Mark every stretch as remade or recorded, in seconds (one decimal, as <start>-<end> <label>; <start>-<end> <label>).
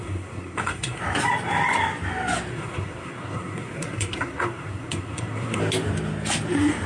0.0-1.0 remade; 1.0-2.5 recorded; 2.5-5.6 remade; 5.6-6.9 recorded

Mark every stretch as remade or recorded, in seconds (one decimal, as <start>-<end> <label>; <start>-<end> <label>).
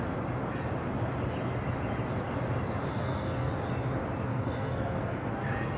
0.0-2.9 recorded; 2.9-3.5 remade; 3.5-4.3 recorded; 4.3-5.3 remade; 5.3-5.8 recorded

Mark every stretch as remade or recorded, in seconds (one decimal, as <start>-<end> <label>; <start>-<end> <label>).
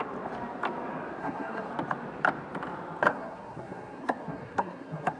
0.0-1.2 recorded; 1.2-1.7 remade; 1.7-3.1 recorded; 3.1-5.2 remade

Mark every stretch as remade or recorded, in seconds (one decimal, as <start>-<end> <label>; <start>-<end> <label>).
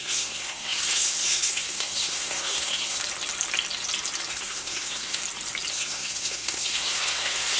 0.0-3.0 remade; 3.0-4.3 recorded; 4.3-5.2 remade; 5.2-5.7 recorded; 5.7-7.6 remade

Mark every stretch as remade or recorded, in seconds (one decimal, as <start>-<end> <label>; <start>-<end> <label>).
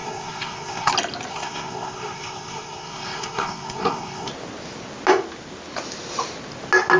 0.0-0.9 remade; 0.9-1.3 recorded; 1.3-4.3 remade; 4.3-7.0 recorded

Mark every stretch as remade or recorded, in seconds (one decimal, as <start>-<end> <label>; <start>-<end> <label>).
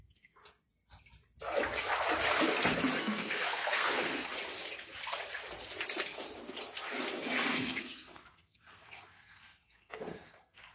0.0-0.4 remade; 0.4-3.0 recorded; 3.0-4.3 remade; 4.3-7.5 recorded; 7.5-10.7 remade